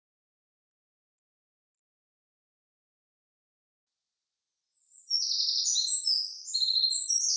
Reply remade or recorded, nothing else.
recorded